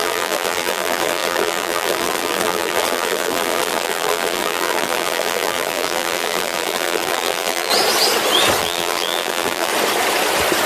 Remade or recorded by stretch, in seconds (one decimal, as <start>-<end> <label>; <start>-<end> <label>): 0.0-7.7 remade; 7.7-8.6 recorded; 8.6-9.7 remade; 9.7-10.7 recorded